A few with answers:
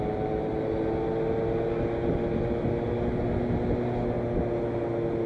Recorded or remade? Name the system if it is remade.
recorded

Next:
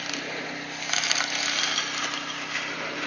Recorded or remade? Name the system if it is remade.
recorded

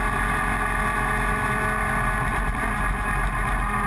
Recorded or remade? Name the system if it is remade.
recorded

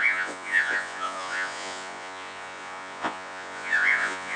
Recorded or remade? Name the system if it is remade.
remade, vocoder, Vocos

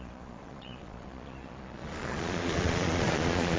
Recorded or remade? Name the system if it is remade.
remade, vocoder, Vocos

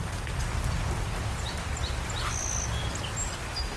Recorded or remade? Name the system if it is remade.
recorded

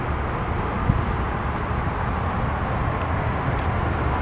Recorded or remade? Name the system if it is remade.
recorded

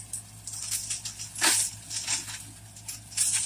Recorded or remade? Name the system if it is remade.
recorded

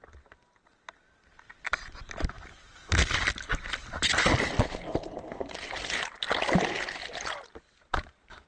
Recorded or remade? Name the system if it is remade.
recorded